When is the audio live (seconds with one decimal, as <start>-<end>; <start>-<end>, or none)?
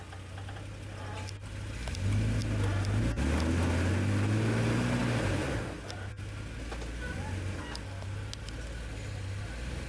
0.0-9.9